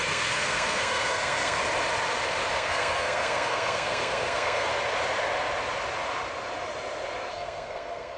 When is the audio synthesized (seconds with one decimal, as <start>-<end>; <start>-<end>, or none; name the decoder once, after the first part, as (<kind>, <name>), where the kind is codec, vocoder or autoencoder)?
0.0-1.6 (codec, SNAC); 2.5-4.7; 7.3-8.2

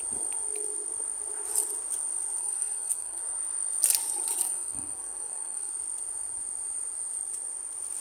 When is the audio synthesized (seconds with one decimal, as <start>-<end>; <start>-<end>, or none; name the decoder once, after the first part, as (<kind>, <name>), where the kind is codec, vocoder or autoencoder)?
2.4-3.2 (codec, SNAC); 4.4-5.7

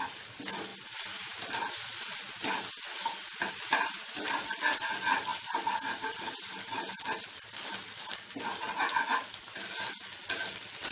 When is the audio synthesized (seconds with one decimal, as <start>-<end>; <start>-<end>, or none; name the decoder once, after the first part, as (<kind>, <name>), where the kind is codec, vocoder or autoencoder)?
none

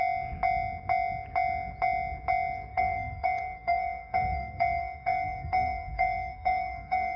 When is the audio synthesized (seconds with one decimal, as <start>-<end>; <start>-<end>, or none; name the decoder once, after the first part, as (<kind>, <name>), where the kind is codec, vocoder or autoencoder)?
2.7-7.2 (codec, SNAC)

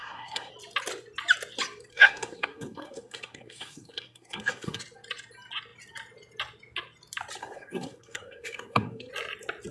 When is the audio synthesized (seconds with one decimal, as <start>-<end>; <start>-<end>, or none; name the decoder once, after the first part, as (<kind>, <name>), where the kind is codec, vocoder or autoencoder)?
0.0-0.5 (codec, SNAC); 1.9-4.8; 7.4-9.1

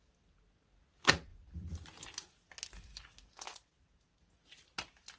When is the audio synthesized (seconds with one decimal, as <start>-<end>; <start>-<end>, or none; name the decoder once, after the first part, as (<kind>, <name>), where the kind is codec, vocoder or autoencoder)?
none

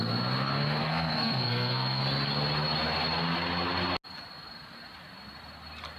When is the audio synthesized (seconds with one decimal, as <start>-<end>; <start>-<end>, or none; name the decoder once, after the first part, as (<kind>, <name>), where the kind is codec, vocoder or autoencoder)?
0.8-2.0 (codec, SNAC)

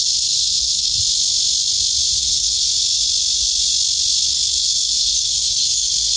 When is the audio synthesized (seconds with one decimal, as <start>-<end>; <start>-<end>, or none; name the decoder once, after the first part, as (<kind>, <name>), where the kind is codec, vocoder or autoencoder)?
0.0-1.0 (codec, SNAC); 2.2-2.6; 4.3-6.2